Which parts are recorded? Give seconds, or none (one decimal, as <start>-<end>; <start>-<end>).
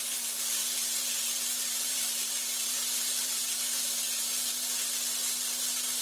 0.0-0.6; 4.2-6.0